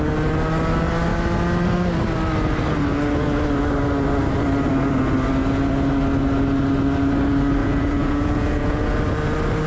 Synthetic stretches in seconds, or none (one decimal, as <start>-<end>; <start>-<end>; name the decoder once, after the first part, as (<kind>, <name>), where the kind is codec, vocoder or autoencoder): 7.6-8.9 (vocoder, Vocos)